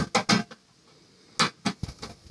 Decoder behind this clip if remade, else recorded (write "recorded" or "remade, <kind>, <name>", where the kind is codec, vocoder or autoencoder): recorded